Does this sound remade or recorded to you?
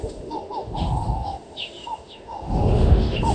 remade